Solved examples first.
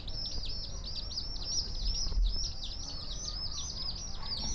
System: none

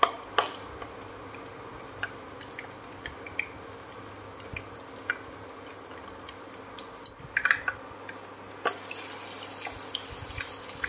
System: none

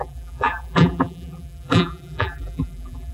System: vocoder, BigVGAN v2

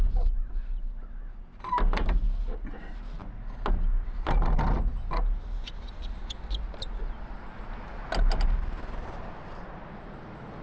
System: none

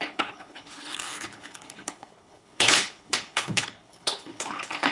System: codec, HILCodec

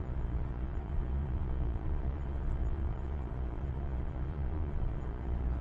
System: vocoder, Vocos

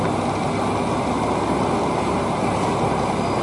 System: none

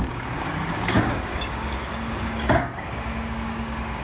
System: codec, DAC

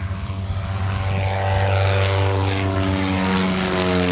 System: codec, DAC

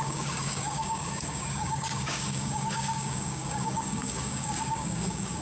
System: codec, DAC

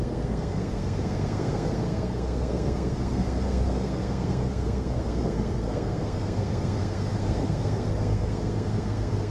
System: codec, SNAC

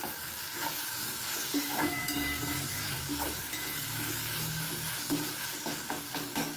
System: codec, DAC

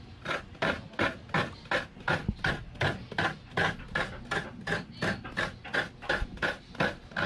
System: none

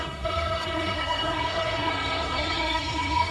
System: codec, SNAC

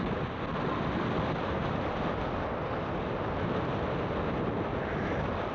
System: none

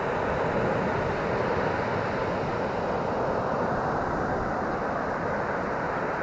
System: none